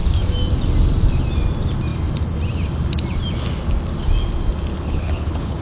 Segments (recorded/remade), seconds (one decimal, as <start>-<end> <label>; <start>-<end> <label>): 0.0-4.7 recorded; 4.7-5.6 remade

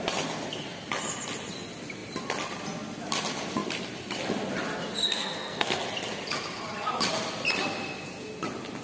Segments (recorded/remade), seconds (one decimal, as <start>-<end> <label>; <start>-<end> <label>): 0.0-5.0 recorded; 5.0-5.8 remade; 5.8-8.8 recorded

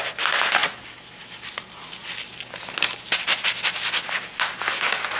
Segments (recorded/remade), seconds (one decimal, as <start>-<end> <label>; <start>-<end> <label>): 0.0-5.2 recorded

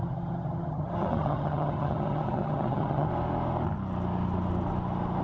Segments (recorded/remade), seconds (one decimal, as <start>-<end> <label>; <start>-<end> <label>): 0.0-3.1 remade; 3.1-5.2 recorded

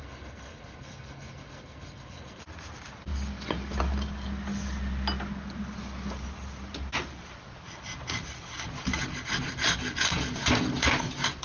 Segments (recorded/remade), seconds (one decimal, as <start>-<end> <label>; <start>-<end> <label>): 0.0-2.4 remade; 2.4-11.4 recorded

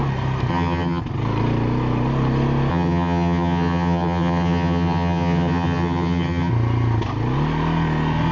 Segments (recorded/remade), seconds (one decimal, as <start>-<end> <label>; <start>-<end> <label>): 0.0-0.5 recorded; 0.5-1.0 remade; 1.0-2.7 recorded; 2.7-6.5 remade; 6.5-8.3 recorded